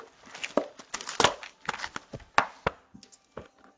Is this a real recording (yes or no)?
yes